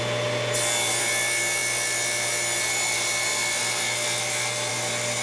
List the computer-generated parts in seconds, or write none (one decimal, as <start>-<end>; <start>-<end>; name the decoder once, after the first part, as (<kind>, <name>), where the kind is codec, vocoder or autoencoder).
none